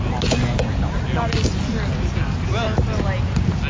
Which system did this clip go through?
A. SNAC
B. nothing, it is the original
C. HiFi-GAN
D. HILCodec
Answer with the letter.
B